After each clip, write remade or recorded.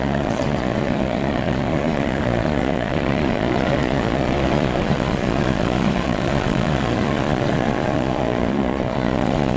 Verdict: remade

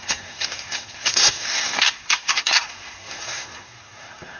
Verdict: remade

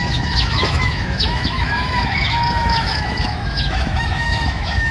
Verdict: remade